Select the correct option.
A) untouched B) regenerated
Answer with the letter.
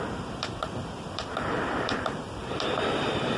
B